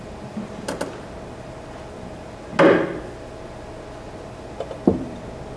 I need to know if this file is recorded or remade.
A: recorded